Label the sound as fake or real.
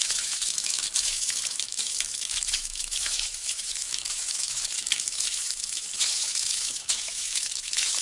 fake